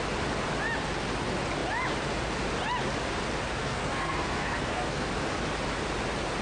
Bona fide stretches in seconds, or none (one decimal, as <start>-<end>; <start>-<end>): 0.0-3.6; 5.1-6.4